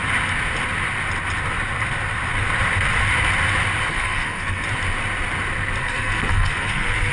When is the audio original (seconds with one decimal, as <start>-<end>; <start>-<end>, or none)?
0.0-3.9; 4.6-5.8